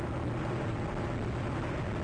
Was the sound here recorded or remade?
recorded